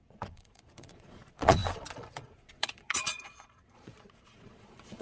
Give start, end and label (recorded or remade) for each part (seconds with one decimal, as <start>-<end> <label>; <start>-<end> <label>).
0.0-5.0 remade